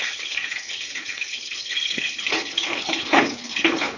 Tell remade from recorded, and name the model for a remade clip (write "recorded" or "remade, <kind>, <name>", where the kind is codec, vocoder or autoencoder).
remade, codec, HILCodec